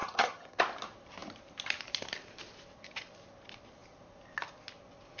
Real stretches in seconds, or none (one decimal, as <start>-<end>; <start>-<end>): 0.6-5.2